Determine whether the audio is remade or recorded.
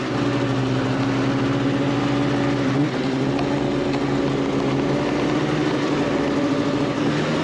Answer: recorded